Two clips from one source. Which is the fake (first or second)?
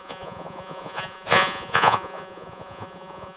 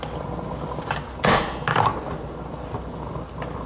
first